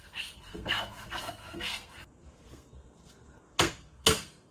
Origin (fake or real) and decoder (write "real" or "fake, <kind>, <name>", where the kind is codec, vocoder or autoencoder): fake, codec, SNAC